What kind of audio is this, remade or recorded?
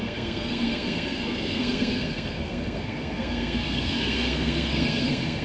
remade